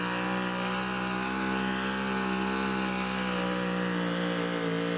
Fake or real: real